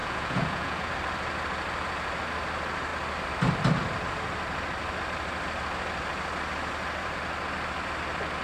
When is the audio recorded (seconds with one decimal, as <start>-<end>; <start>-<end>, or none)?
0.9-8.4